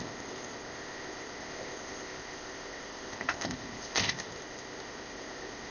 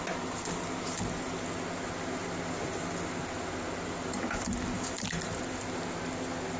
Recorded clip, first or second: second